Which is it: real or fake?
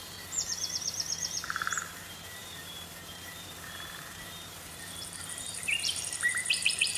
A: fake